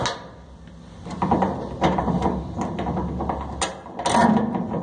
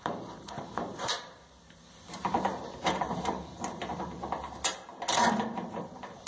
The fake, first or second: second